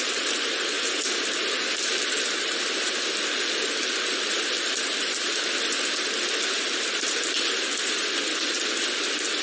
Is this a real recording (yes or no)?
yes